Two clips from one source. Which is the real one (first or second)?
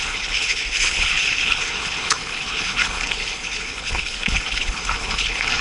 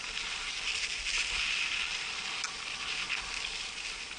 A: second